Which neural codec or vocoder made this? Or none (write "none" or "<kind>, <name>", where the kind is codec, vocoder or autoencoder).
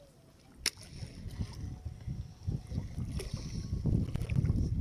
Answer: none